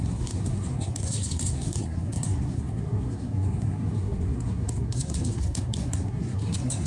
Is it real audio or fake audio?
fake